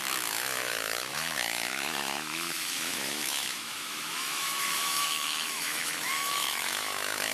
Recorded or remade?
remade